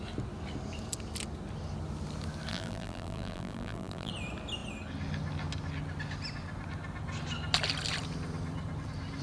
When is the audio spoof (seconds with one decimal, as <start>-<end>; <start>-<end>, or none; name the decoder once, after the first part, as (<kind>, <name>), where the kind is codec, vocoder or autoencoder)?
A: 2.5-4.1 (vocoder, BigVGAN v2)